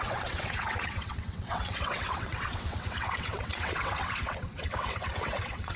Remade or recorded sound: remade